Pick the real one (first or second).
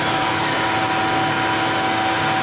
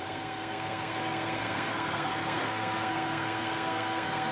first